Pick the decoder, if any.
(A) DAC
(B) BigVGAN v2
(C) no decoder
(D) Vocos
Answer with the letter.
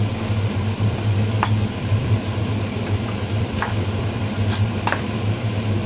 B